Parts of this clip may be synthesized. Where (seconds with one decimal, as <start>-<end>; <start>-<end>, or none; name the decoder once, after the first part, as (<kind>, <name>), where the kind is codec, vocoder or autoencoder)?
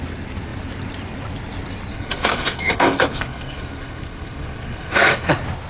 1.9-5.3 (codec, SNAC)